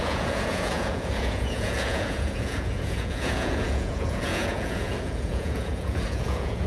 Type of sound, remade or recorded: remade